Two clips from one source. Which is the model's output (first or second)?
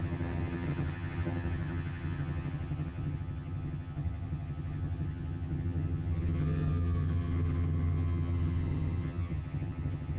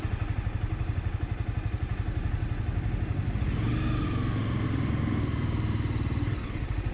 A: first